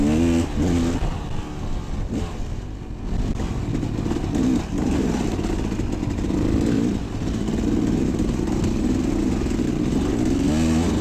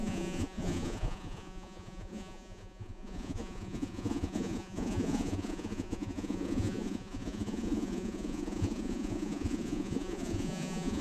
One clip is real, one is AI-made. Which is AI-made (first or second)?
second